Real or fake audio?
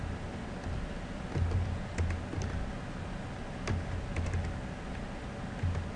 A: real